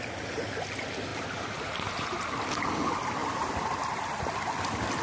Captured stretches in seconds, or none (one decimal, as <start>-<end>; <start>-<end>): 0.0-3.2; 4.3-5.0

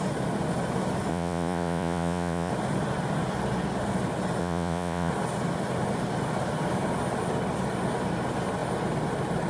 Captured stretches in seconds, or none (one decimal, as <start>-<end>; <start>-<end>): 0.0-1.1; 2.5-4.4; 5.1-9.5

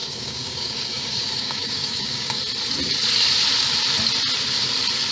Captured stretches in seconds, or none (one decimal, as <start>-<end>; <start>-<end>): 2.4-5.1

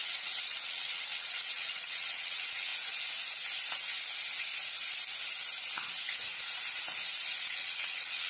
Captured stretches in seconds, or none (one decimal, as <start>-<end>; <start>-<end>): 2.7-7.4

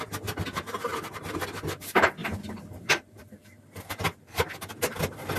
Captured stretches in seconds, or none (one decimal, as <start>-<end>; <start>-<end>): 0.0-0.9; 1.4-2.2; 2.9-3.4; 5.0-5.4